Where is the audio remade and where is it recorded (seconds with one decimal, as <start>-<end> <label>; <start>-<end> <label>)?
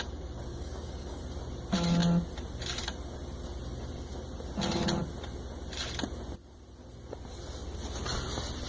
0.0-0.5 recorded; 0.5-1.2 remade; 1.2-8.7 recorded